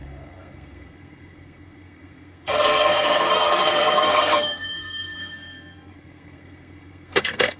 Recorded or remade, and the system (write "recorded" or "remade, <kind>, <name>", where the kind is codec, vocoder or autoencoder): remade, codec, SNAC